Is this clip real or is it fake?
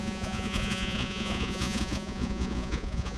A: fake